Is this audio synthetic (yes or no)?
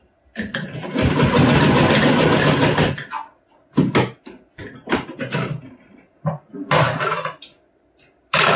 no